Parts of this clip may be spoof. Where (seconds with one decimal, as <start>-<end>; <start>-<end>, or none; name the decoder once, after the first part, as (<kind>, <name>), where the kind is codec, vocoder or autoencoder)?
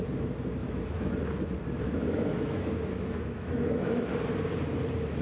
0.6-1.1 (autoencoder, DAC-VAE); 1.8-4.1